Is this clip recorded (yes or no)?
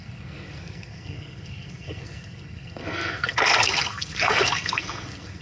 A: no